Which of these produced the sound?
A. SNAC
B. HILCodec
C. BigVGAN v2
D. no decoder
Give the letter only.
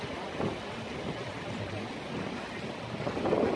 D